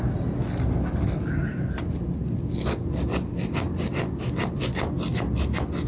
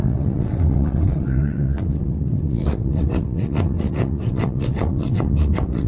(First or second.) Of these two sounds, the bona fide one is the first